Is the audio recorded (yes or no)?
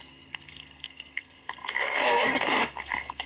no